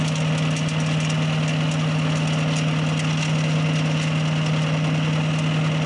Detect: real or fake real